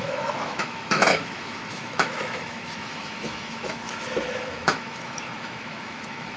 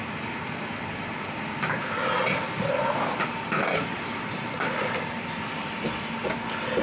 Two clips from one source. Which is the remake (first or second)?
first